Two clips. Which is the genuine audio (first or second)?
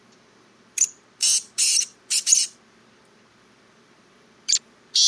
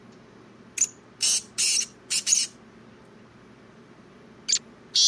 second